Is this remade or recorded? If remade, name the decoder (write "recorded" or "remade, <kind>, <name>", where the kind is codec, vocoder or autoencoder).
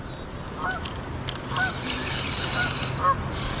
recorded